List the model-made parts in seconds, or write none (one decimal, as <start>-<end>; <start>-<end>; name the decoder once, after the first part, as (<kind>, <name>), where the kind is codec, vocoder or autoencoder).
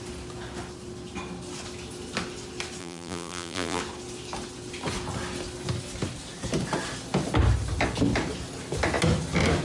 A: 2.8-3.8 (vocoder, BigVGAN v2)